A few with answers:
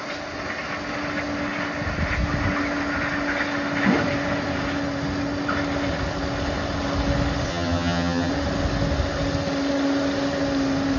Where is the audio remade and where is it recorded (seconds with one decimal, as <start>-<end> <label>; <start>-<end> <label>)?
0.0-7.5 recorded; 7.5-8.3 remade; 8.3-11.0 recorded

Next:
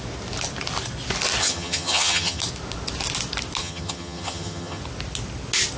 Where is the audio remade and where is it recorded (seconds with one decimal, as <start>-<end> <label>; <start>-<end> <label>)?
0.0-1.4 recorded; 1.4-2.4 remade; 2.4-3.6 recorded; 3.6-4.8 remade; 4.8-5.8 recorded

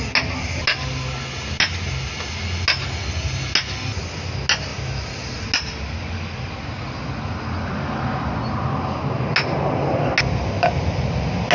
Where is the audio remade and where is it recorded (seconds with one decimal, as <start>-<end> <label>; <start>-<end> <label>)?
0.0-11.5 recorded

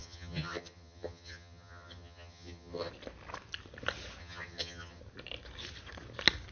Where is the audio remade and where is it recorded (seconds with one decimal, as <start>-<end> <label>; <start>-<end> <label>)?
0.0-2.9 remade; 2.9-4.2 recorded; 4.2-5.0 remade; 5.0-6.5 recorded

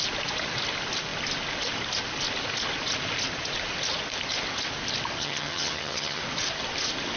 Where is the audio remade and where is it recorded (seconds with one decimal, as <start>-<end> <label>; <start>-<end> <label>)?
0.0-5.2 recorded; 5.2-6.2 remade; 6.2-7.2 recorded

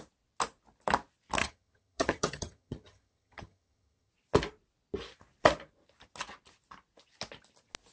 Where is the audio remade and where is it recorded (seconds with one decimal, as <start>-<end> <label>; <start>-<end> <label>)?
0.0-1.4 recorded; 1.4-4.1 remade; 4.1-7.9 recorded

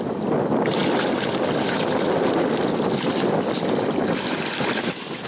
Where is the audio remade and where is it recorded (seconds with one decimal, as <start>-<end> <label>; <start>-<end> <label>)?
0.0-5.3 recorded

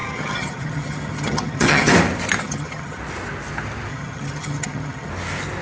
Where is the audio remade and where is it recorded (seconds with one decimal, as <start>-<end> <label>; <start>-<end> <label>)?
0.0-1.9 remade; 1.9-2.4 recorded; 2.4-3.0 remade; 3.0-3.9 recorded; 3.9-5.1 remade; 5.1-5.6 recorded